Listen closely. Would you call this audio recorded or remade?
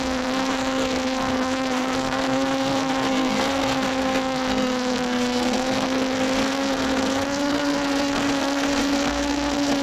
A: remade